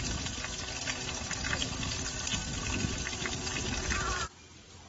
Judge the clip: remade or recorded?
recorded